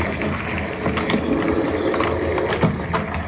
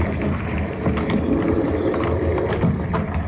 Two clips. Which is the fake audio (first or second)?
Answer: second